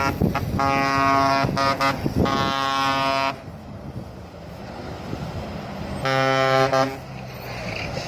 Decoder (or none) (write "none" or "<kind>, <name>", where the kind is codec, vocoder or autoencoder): none